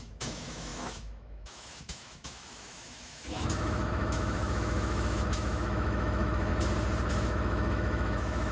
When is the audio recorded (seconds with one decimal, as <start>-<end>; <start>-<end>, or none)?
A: 6.5-7.1